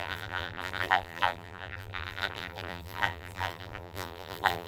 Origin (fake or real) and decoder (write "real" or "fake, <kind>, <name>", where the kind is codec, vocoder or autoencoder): fake, vocoder, BigVGAN v2